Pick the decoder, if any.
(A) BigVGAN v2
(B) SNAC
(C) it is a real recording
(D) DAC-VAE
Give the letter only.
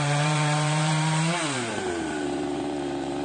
A